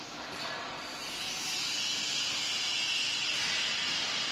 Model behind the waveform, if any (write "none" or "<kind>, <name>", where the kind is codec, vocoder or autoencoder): none